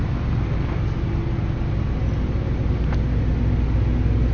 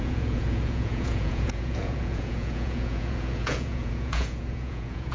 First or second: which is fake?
second